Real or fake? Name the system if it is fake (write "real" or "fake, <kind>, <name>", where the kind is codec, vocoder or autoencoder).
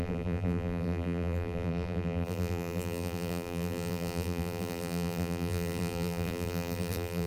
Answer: fake, vocoder, BigVGAN v2